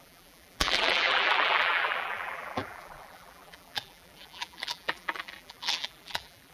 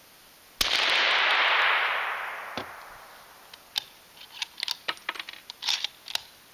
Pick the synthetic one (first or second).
first